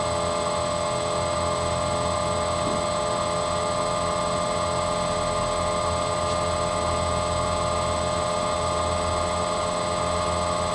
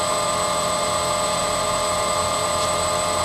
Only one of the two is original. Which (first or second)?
first